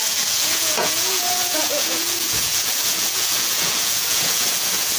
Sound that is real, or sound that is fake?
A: fake